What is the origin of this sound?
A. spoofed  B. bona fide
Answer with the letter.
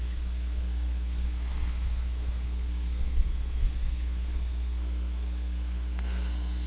A